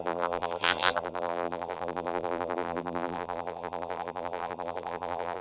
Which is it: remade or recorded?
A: remade